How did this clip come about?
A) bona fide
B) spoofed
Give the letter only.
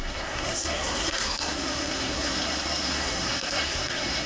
B